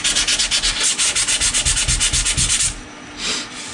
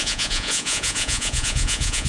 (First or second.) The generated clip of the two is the second